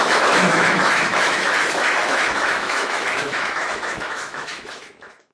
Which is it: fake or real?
fake